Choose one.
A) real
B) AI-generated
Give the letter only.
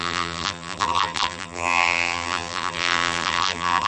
B